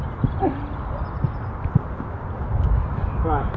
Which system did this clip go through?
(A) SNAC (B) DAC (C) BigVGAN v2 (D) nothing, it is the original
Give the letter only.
D